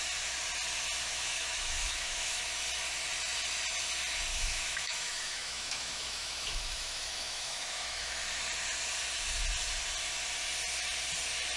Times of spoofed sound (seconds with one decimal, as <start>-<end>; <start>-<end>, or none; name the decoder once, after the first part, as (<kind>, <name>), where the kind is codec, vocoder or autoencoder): 1.1-2.4 (autoencoder, DAC-VAE); 4.3-8.1